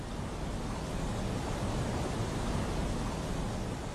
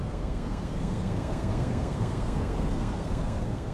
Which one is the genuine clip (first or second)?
first